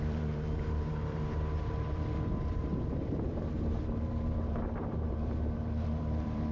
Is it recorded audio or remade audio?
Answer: remade